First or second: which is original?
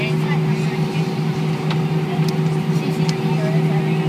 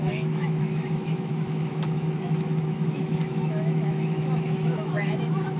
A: first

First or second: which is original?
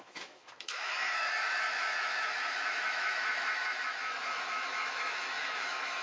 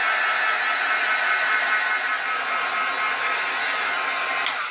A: second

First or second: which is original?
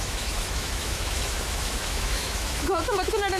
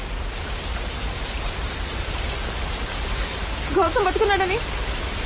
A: second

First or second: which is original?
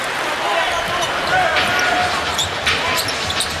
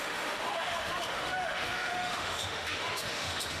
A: first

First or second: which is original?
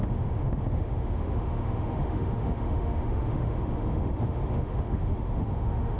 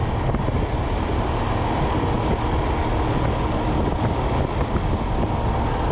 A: second